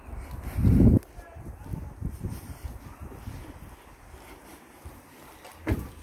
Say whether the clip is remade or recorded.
recorded